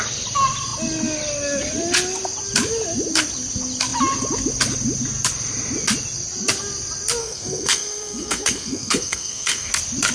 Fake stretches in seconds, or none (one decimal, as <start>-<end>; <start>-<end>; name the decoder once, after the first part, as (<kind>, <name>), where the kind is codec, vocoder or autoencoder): 7.2-9.7 (codec, SNAC)

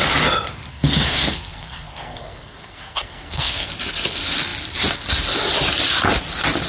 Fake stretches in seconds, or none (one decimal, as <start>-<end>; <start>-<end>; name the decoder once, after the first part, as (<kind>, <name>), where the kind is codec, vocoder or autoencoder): 0.7-3.7 (codec, SNAC)

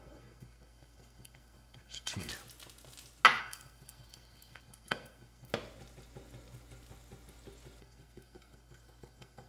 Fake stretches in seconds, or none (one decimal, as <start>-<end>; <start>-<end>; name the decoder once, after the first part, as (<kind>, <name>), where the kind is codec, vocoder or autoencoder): 0.0-2.3 (codec, SNAC); 3.4-5.5; 7.8-9.5

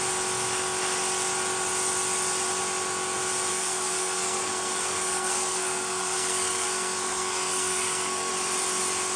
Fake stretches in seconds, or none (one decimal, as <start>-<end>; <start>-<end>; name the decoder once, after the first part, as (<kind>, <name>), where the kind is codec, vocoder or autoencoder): 3.5-8.3 (codec, SNAC)

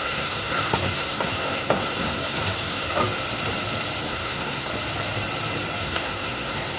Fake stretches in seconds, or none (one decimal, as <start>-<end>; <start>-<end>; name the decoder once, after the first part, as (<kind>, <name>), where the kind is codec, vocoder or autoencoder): 0.0-3.0 (codec, SNAC); 4.0-4.7; 5.8-6.8

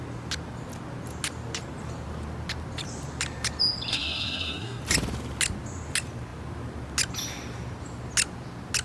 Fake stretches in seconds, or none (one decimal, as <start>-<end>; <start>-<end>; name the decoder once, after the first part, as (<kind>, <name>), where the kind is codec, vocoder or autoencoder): 3.9-4.8 (codec, SNAC)

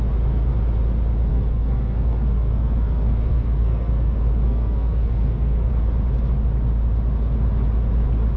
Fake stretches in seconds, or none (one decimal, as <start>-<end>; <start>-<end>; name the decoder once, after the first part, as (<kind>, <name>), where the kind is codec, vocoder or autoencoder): 1.3-5.7 (codec, SNAC)

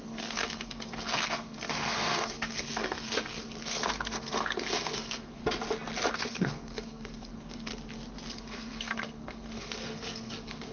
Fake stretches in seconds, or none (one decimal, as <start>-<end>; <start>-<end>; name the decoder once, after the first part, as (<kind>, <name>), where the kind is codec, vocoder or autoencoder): 0.0-5.4 (codec, SNAC); 6.1-7.7; 8.3-10.7